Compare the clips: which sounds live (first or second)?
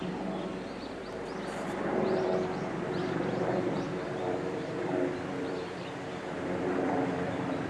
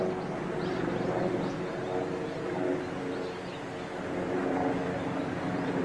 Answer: second